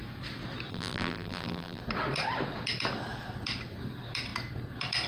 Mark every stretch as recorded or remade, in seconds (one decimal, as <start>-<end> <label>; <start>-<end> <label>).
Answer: 0.0-0.7 recorded; 0.7-1.8 remade; 1.8-5.1 recorded